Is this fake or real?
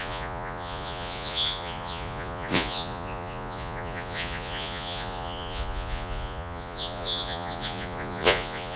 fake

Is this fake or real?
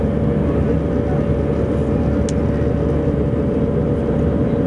real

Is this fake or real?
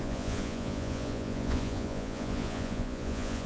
fake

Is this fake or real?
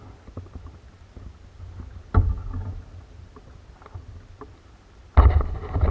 real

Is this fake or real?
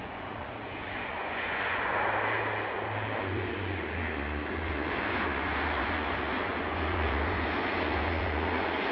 fake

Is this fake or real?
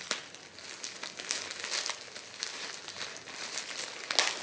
real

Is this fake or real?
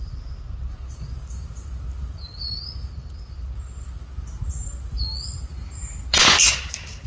real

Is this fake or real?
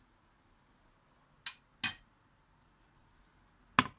real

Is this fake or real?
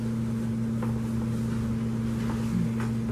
real